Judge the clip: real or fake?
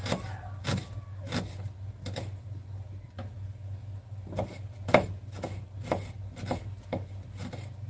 real